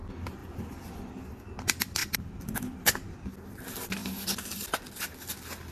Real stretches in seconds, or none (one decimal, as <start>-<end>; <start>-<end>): 0.0-0.4; 1.1-2.0; 2.8-4.0; 4.8-5.7